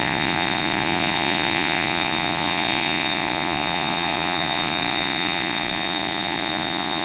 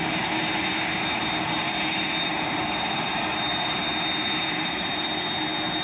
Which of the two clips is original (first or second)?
second